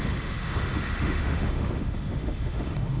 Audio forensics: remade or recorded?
remade